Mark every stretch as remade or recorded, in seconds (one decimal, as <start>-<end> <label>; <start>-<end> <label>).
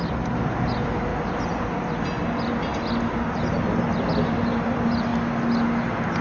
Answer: 0.0-6.2 recorded